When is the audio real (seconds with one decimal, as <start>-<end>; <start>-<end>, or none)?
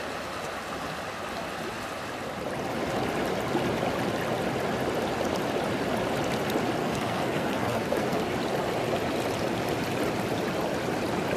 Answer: 0.0-6.8; 8.2-11.4